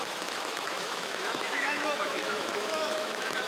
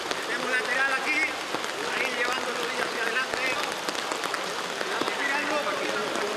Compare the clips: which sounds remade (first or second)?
first